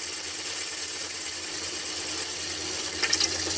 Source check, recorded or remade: recorded